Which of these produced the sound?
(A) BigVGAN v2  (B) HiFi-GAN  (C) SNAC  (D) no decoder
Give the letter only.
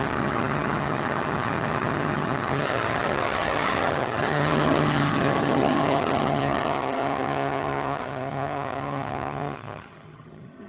B